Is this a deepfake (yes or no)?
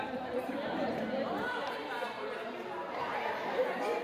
yes